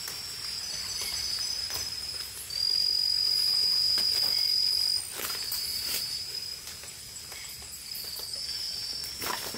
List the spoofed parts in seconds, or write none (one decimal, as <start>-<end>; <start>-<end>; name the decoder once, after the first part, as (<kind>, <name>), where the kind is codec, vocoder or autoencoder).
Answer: none